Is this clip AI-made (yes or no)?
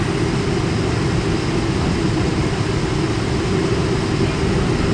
no